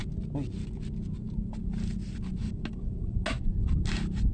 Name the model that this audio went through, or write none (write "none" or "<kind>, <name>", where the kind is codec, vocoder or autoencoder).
none